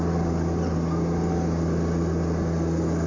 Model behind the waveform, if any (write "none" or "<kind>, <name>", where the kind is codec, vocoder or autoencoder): none